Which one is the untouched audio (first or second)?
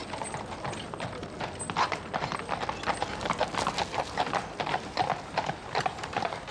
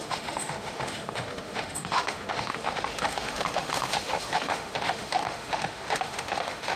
first